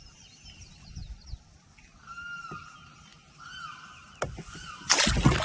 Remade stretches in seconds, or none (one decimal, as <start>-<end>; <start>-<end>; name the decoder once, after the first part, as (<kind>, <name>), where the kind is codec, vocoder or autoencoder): none